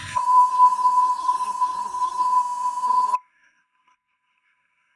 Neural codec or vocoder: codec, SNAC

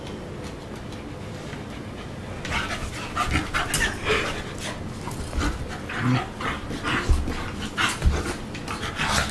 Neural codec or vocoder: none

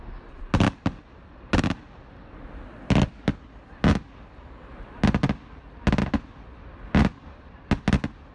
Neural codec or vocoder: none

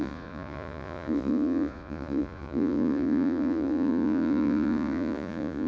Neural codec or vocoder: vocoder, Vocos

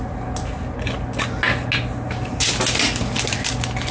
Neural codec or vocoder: none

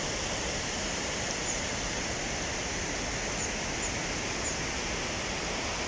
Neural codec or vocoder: none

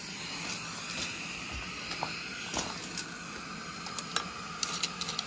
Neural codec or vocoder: none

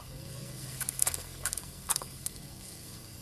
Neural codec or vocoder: codec, SNAC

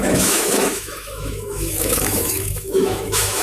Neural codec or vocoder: autoencoder, DAC-VAE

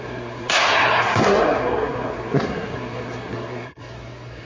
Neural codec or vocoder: codec, SNAC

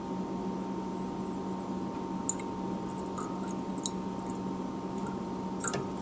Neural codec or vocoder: none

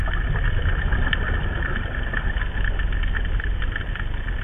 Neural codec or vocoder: none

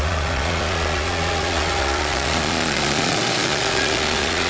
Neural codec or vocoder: vocoder, Vocos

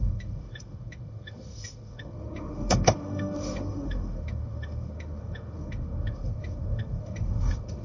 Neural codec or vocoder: autoencoder, DAC-VAE